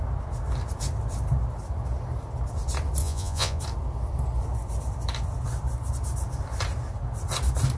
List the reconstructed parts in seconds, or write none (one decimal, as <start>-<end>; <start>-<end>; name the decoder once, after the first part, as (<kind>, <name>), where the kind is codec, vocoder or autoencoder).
3.0-3.6 (vocoder, Vocos)

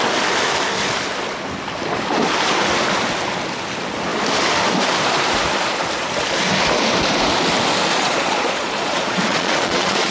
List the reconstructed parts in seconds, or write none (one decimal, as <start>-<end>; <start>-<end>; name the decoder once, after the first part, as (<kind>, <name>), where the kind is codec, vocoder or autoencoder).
7.9-10.1 (vocoder, Vocos)

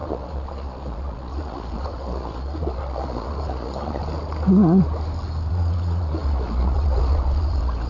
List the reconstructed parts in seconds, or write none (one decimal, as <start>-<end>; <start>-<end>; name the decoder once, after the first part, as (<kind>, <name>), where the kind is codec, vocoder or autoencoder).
0.0-4.0 (vocoder, Vocos); 5.5-7.9

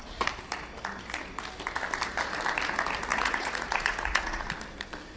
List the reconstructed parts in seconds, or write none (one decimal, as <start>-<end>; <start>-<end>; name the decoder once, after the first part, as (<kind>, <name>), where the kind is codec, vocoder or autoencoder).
3.1-4.5 (vocoder, Vocos)

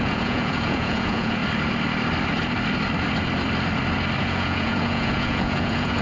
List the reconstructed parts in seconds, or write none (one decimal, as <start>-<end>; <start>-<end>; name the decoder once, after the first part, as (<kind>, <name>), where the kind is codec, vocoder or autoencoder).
0.0-1.4 (vocoder, Vocos); 4.2-6.0